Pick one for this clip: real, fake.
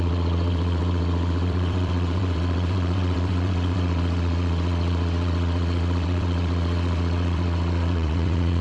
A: fake